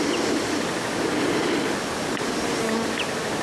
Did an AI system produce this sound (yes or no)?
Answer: no